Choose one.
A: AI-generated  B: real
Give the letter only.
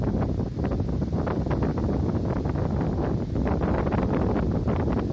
B